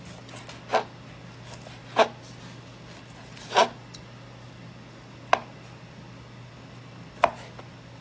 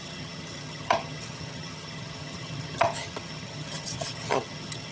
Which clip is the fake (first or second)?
second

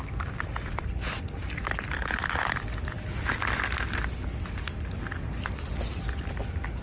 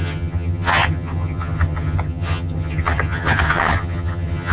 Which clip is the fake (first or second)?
second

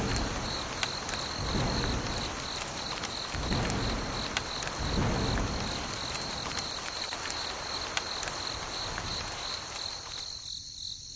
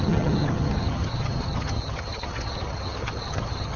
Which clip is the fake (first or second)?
second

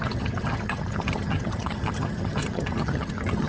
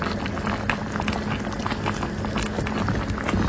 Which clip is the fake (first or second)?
first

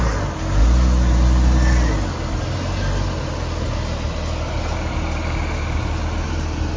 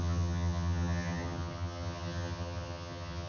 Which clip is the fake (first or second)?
second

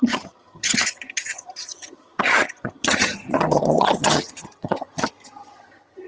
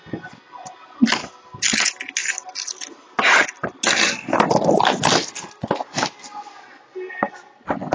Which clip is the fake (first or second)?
first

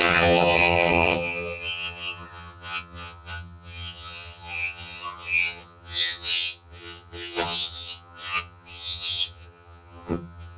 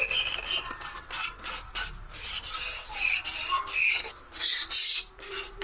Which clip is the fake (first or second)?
first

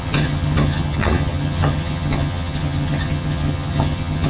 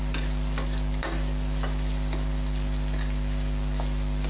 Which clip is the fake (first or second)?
first